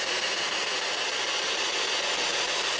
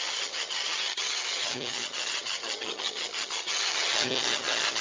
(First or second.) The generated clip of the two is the second